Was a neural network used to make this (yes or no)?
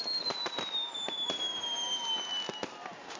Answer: no